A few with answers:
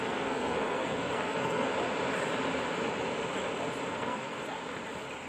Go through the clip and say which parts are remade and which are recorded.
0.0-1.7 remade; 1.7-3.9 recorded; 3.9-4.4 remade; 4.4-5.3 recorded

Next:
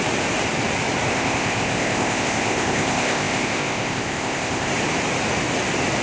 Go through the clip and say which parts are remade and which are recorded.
0.0-1.1 recorded; 1.1-4.7 remade; 4.7-6.0 recorded

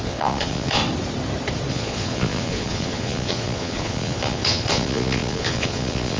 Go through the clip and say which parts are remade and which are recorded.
0.0-0.8 remade; 0.8-1.7 recorded; 1.7-6.2 remade

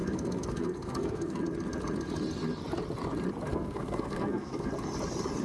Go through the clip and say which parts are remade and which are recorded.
0.0-1.4 remade; 1.4-3.5 recorded; 3.5-4.7 remade; 4.7-5.4 recorded

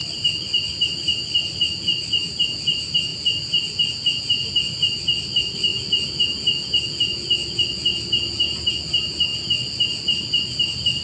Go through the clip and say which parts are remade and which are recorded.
0.0-11.0 recorded

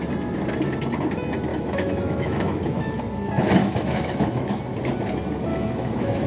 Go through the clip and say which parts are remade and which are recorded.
0.0-1.5 recorded; 1.5-3.0 remade; 3.0-3.6 recorded; 3.6-4.6 remade; 4.6-5.5 recorded; 5.5-6.3 remade

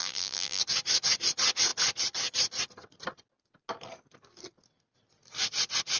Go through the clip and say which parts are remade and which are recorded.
0.0-0.6 remade; 0.6-6.0 recorded

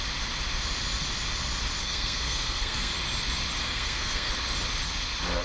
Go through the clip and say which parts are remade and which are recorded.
0.0-1.8 recorded; 1.8-2.9 remade; 2.9-3.6 recorded; 3.6-4.3 remade; 4.3-5.4 recorded